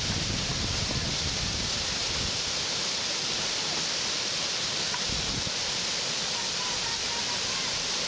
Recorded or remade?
recorded